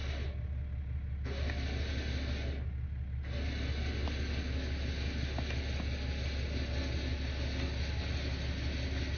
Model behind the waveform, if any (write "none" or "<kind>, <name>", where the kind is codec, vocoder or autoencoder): none